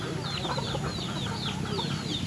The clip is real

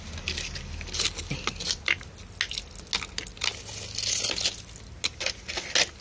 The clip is real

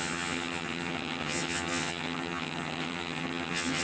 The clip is fake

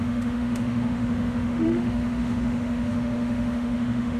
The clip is fake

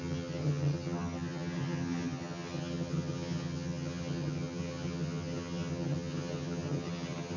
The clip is fake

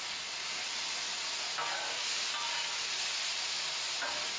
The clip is real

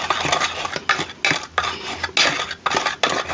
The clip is real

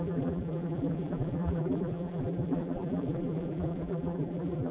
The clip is fake